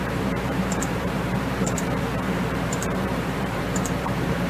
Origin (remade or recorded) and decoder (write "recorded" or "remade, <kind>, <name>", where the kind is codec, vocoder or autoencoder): remade, vocoder, BigVGAN v2